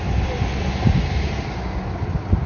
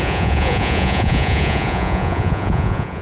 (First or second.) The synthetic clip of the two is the second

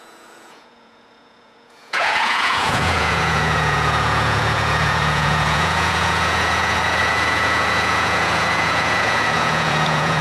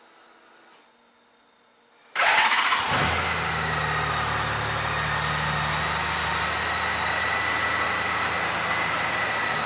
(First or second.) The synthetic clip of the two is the first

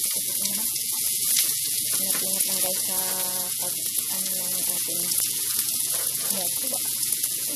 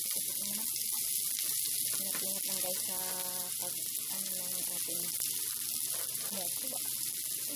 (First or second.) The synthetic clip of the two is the first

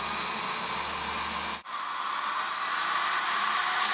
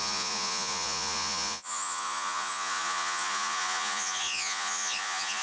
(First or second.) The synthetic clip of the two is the second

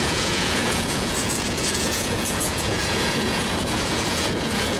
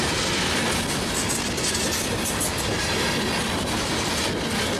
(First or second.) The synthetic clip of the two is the first